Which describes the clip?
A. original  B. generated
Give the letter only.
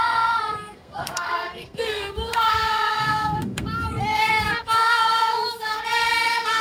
B